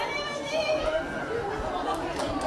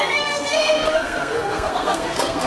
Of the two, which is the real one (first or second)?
first